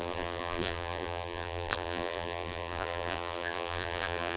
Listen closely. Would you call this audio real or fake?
fake